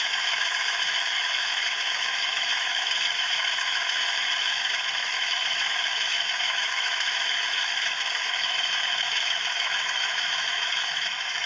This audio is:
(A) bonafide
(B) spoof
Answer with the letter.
B